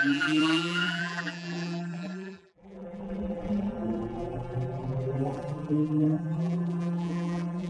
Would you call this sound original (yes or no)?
no